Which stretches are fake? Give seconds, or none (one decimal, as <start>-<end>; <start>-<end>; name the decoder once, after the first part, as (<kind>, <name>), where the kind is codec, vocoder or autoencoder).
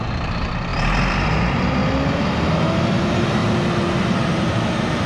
0.0-1.8 (vocoder, BigVGAN v2); 3.0-3.4; 3.9-5.1